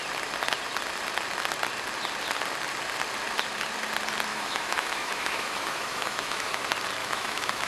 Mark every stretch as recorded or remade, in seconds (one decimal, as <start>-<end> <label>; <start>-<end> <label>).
0.0-4.3 recorded; 4.3-6.6 remade; 6.6-7.0 recorded; 7.0-7.7 remade